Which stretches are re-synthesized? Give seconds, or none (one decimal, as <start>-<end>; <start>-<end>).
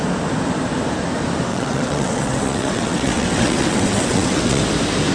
1.5-4.6